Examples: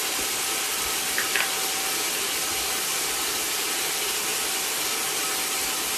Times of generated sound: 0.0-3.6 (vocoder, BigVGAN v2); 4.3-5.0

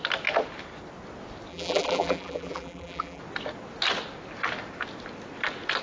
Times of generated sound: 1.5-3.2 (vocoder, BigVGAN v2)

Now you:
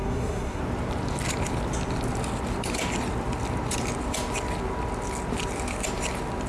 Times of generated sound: 0.0-0.6 (codec, SNAC)

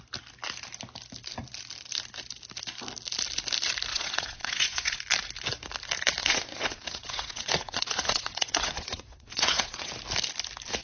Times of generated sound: 3.9-5.0 (vocoder, WaveNeXt); 6.2-9.9